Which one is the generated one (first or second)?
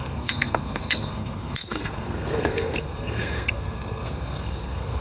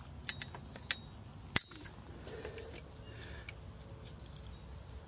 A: first